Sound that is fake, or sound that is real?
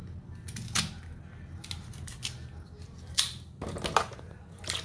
real